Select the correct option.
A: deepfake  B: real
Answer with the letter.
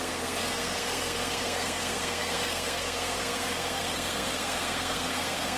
A